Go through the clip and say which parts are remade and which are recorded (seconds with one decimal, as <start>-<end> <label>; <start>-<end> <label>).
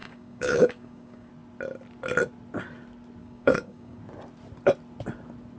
0.0-1.3 remade; 1.3-3.2 recorded; 3.2-4.0 remade; 4.0-5.6 recorded